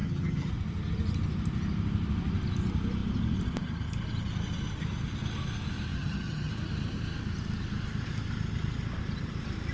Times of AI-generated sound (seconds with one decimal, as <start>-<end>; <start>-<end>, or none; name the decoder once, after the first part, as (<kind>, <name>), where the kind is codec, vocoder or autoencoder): 0.0-0.5 (vocoder, HiFi-GAN); 5.9-6.5